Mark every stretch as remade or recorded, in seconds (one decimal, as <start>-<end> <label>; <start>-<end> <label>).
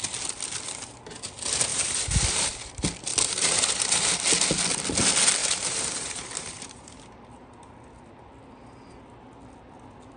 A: 0.0-1.7 recorded; 1.7-2.5 remade; 2.5-3.1 recorded; 3.1-4.1 remade; 4.1-5.4 recorded; 5.4-7.0 remade; 7.0-10.2 recorded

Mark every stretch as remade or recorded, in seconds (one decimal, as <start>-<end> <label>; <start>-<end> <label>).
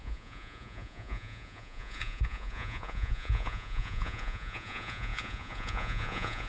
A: 0.0-6.5 remade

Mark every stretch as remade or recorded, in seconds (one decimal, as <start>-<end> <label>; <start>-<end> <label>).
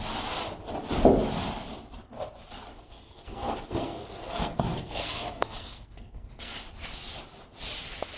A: 0.0-2.7 recorded; 2.7-6.6 remade; 6.6-8.2 recorded